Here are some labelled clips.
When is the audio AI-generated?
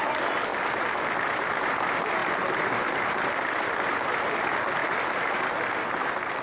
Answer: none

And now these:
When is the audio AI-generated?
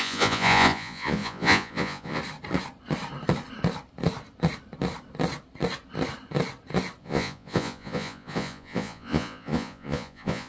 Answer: 0.0-2.2 (vocoder, Vocos); 7.0-10.5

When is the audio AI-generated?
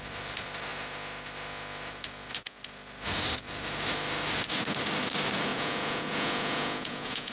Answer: 5.5-7.3 (vocoder, Vocos)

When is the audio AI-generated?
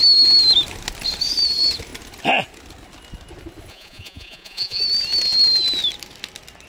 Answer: 3.7-4.8 (vocoder, Vocos)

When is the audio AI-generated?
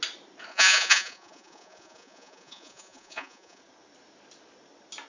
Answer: 0.5-3.6 (vocoder, Vocos)